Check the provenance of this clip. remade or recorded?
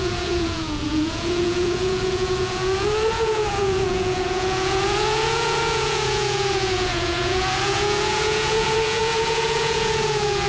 remade